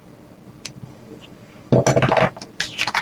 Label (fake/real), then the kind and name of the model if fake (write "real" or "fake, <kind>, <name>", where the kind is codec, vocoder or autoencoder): real